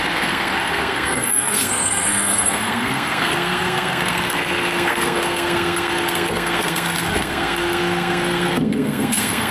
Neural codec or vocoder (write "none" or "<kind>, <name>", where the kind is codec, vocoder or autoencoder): codec, SNAC